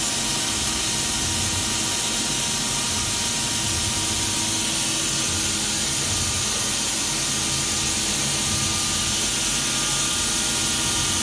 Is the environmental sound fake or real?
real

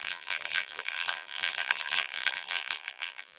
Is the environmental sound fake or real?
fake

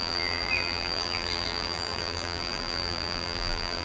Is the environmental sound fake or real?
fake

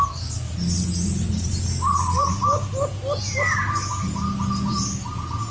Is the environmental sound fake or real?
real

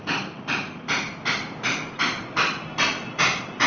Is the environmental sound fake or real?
real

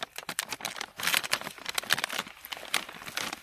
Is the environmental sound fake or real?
fake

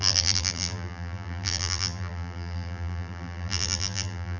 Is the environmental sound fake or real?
fake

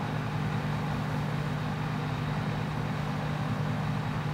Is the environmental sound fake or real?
real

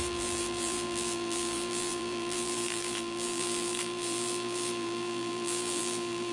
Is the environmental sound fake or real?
fake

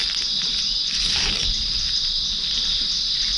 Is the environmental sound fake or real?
fake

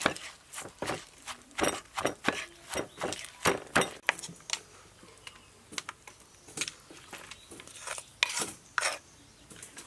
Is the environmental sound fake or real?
real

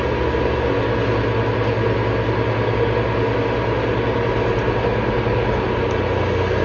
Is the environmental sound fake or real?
real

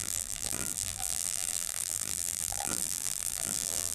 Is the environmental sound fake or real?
fake